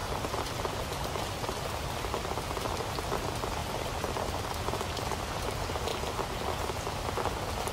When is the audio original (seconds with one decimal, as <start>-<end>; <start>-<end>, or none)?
0.0-7.7